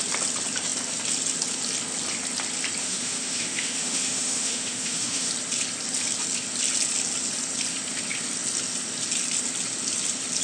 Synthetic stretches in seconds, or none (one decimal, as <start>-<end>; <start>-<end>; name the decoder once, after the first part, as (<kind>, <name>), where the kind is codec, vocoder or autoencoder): 2.8-5.3 (autoencoder, DAC-VAE)